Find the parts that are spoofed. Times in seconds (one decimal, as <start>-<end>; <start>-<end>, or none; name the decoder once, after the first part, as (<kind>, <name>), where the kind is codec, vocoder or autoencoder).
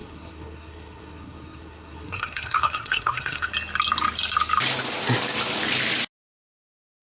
0.0-3.5 (codec, SNAC); 6.6-7.0